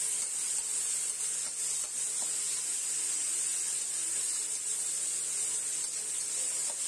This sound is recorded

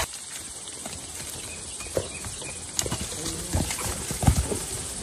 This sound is recorded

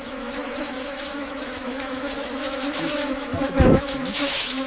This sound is remade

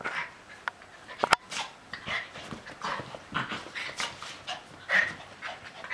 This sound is recorded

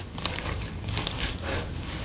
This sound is remade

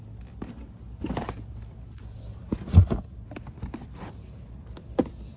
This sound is recorded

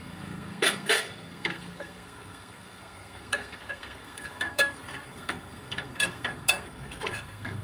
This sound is remade